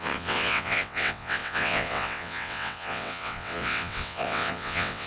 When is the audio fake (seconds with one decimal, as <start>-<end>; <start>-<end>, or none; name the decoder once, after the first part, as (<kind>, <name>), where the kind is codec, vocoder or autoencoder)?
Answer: 0.0-5.1 (vocoder, WaveNeXt)